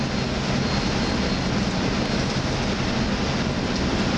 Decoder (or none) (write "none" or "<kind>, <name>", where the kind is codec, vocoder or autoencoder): none